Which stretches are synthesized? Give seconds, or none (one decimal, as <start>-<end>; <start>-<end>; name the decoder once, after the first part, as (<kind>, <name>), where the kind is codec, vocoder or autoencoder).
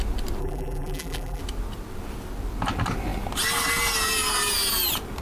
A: 0.4-1.4 (vocoder, BigVGAN v2)